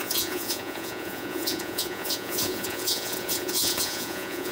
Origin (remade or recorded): remade